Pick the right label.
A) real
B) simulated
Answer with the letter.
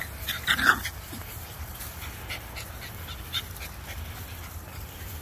A